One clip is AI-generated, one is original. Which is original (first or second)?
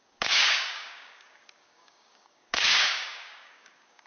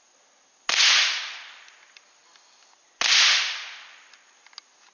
second